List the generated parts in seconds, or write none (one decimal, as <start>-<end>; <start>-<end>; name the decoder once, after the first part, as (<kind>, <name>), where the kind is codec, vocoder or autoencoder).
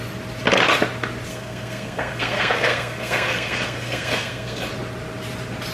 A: 1.3-4.7 (codec, SNAC)